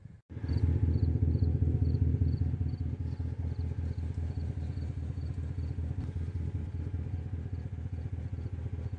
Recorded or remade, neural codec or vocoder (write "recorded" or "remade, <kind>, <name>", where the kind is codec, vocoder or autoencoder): recorded